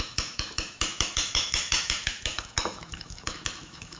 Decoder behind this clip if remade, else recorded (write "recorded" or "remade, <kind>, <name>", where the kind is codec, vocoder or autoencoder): remade, autoencoder, DAC-VAE